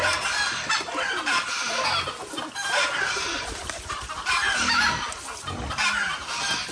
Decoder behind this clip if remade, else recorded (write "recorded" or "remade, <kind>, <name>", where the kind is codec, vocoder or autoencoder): recorded